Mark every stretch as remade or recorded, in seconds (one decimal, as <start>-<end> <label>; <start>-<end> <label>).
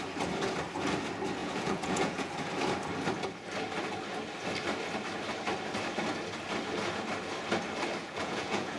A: 0.0-1.4 recorded; 1.4-2.3 remade; 2.3-8.0 recorded; 8.0-8.8 remade